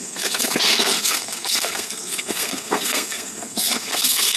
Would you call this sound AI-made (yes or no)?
yes